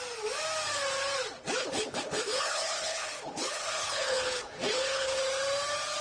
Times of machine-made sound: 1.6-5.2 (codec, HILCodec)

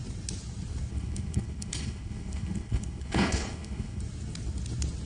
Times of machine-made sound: 0.9-4.0 (codec, HILCodec)